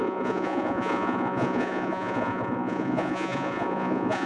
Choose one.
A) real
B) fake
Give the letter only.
B